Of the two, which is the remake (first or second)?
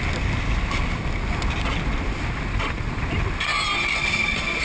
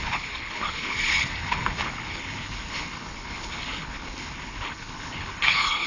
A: second